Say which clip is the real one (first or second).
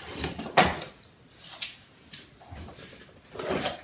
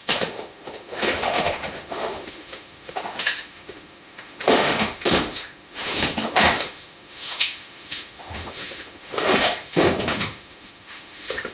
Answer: first